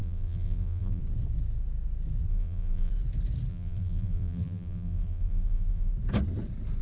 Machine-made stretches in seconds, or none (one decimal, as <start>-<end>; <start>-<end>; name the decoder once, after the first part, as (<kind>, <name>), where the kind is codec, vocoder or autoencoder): 0.0-1.0 (vocoder, BigVGAN v2); 2.3-2.9; 3.5-5.9